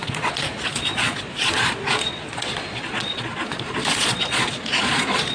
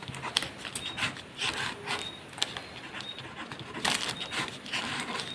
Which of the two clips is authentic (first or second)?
second